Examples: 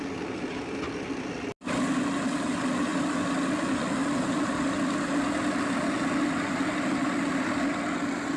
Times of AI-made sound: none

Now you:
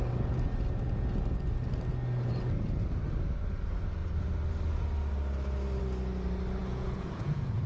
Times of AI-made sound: 6.6-7.7 (vocoder, Vocos)

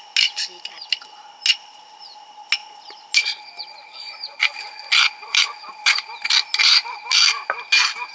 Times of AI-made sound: none

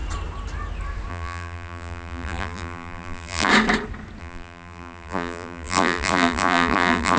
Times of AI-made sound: 1.1-3.5 (vocoder, BigVGAN v2); 4.2-7.2

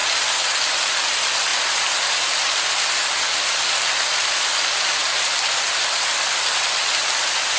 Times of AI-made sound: 0.5-7.6 (vocoder, BigVGAN v2)

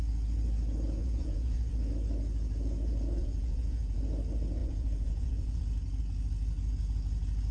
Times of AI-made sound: 1.0-1.7 (vocoder, Vocos); 3.2-4.0; 4.6-5.6

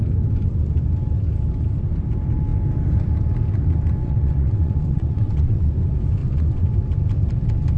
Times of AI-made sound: 4.0-5.7 (vocoder, WaveNeXt); 6.2-6.7